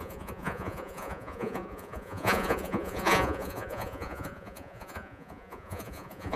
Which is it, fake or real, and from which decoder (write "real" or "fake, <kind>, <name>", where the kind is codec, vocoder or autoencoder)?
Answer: fake, vocoder, Vocos